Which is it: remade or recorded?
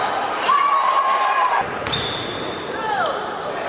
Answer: remade